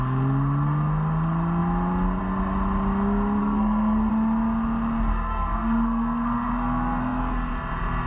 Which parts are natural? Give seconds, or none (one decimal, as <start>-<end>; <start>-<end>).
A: 0.0-3.4; 4.1-5.1; 7.2-8.1